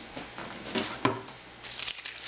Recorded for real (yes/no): yes